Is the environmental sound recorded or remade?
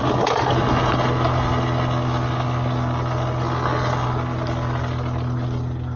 recorded